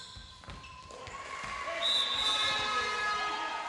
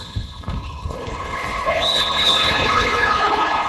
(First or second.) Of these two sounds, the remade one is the second